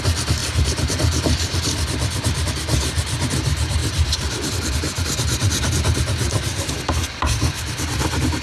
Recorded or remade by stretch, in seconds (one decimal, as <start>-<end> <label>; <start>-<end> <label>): 0.0-0.4 recorded; 0.4-2.5 remade; 2.5-3.8 recorded; 3.8-4.5 remade; 4.5-8.4 recorded